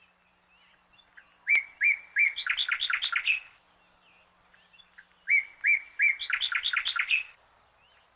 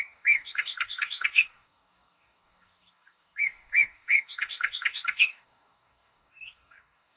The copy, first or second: second